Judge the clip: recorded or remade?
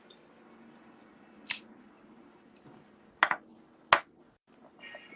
recorded